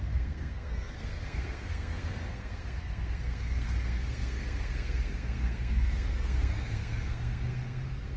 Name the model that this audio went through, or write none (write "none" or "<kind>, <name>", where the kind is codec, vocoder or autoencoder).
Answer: codec, SNAC